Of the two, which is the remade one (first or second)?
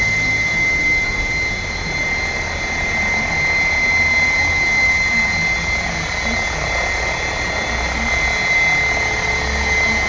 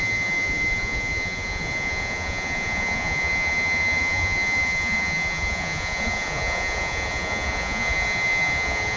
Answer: second